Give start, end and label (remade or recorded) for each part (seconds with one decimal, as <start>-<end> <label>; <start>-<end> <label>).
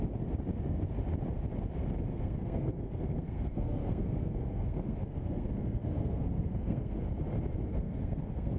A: 0.0-2.1 recorded; 2.1-7.1 remade; 7.1-7.7 recorded; 7.7-8.6 remade